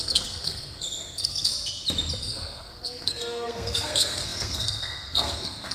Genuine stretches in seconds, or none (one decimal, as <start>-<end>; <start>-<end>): 1.5-2.2